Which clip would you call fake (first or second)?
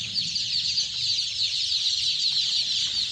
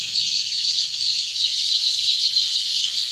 second